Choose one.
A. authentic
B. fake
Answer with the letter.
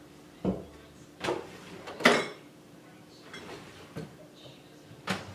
B